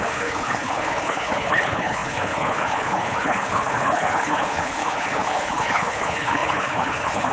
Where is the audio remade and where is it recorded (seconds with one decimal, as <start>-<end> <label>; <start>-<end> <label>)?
0.0-7.3 remade